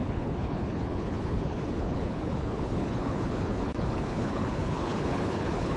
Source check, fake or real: fake